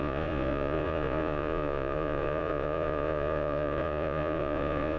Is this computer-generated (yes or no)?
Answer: yes